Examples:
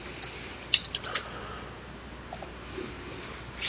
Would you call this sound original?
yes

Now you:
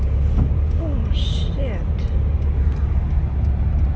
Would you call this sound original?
yes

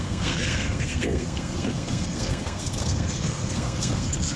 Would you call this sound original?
no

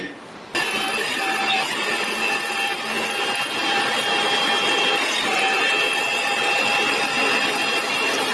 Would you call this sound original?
yes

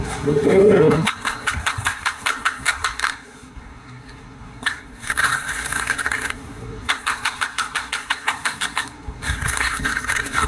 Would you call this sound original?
no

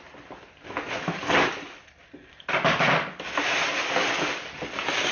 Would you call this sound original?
yes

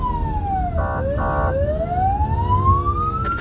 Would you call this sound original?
yes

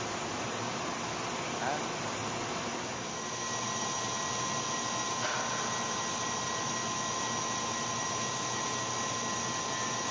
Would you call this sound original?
yes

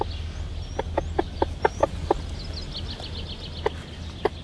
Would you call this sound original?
yes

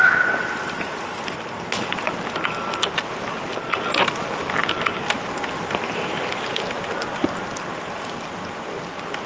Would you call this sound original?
yes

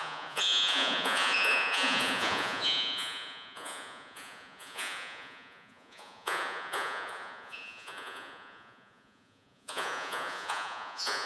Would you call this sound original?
no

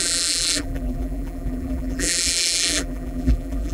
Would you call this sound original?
no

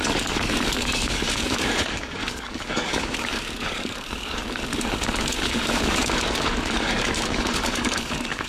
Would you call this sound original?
no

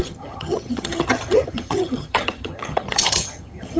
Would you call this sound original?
no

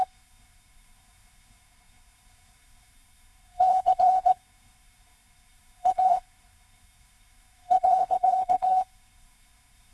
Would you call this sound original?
no